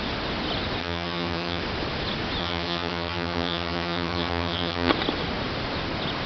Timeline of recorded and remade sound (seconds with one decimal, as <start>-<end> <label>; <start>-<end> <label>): 0.0-0.8 recorded; 0.8-1.6 remade; 1.6-2.4 recorded; 2.4-4.9 remade; 4.9-6.3 recorded

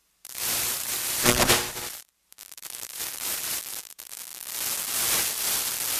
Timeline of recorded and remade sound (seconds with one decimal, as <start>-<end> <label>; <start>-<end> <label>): 0.0-3.6 remade; 3.6-6.0 recorded

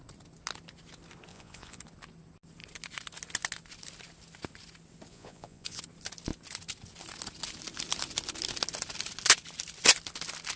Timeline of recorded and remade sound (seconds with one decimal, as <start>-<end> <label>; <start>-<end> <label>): 0.0-1.3 recorded; 1.3-1.8 remade; 1.8-5.1 recorded; 5.1-5.8 remade; 5.8-10.6 recorded

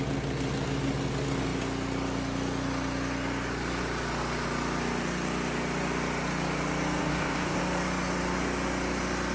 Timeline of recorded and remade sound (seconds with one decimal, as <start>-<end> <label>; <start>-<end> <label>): 0.0-7.0 recorded; 7.0-7.6 remade; 7.6-9.3 recorded

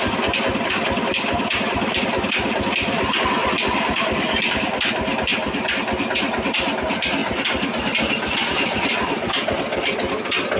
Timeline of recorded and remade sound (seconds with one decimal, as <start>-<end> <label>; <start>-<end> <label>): 0.0-10.6 recorded